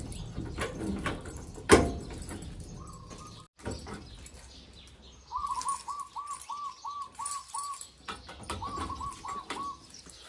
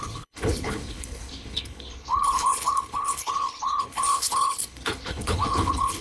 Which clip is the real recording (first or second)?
first